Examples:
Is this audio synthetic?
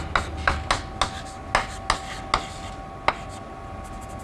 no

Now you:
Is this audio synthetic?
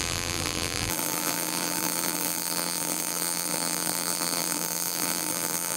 yes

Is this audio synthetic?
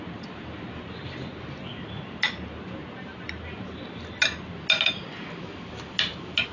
no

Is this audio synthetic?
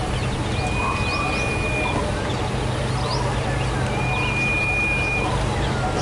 no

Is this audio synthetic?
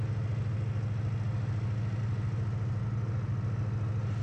no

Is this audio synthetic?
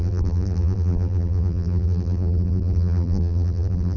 yes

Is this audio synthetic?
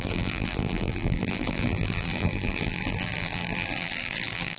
yes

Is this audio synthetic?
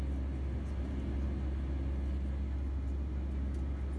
no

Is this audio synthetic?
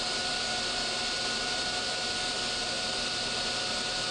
no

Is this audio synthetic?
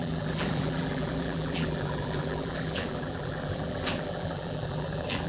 yes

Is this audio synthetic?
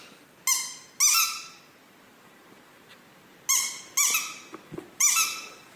no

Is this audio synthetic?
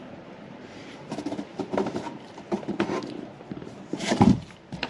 yes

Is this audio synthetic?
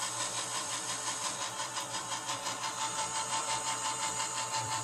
yes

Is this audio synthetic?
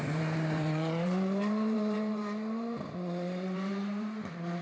yes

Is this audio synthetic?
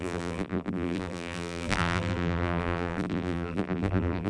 yes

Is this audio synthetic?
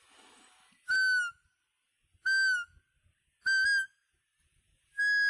no